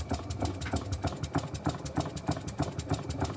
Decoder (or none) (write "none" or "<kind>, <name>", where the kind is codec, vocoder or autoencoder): none